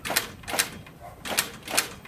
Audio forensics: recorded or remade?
recorded